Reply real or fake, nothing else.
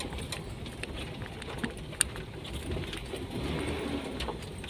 real